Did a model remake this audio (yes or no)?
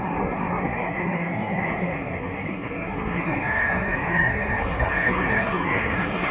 yes